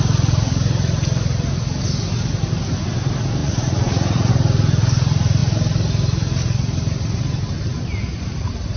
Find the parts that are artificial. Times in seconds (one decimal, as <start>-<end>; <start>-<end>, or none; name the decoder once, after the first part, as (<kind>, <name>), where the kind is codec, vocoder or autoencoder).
3.4-4.3 (vocoder, Vocos)